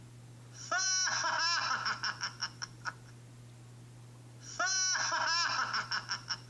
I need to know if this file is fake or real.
real